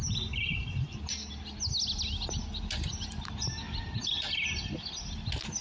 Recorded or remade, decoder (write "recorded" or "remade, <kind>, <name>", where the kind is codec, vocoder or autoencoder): recorded